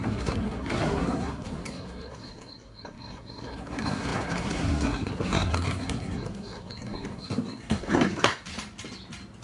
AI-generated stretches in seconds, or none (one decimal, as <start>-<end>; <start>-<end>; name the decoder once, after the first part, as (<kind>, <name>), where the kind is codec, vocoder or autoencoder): 0.0-8.5 (codec, SNAC)